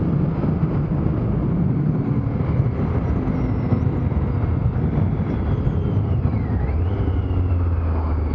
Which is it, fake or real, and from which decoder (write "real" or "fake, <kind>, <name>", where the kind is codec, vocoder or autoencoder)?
real